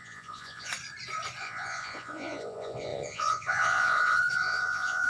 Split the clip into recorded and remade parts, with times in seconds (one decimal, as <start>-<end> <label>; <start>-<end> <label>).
0.0-0.7 remade; 0.7-1.4 recorded; 1.4-5.1 remade